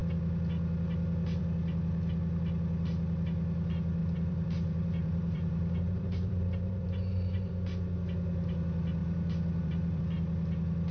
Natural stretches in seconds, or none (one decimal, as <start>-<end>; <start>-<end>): 0.0-4.0; 7.5-9.0; 10.0-10.9